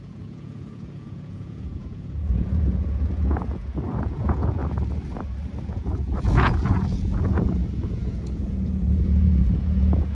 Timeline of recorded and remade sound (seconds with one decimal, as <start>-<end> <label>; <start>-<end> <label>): 0.0-4.6 remade; 4.6-5.7 recorded; 5.7-10.1 remade